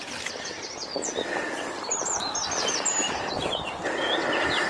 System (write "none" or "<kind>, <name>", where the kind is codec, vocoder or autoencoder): vocoder, BigVGAN v2